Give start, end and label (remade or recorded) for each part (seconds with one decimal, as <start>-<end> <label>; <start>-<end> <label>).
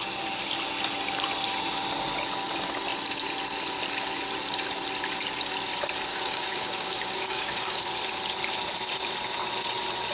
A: 0.0-6.1 recorded; 6.1-7.8 remade; 7.8-10.1 recorded